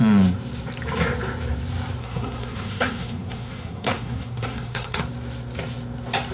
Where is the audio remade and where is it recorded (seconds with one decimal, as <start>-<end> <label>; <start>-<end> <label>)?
0.0-2.0 recorded; 2.0-5.0 remade; 5.0-6.3 recorded